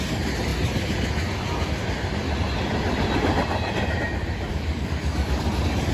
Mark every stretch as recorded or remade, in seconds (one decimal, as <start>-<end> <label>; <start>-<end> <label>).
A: 0.0-4.5 recorded; 4.5-5.5 remade; 5.5-5.9 recorded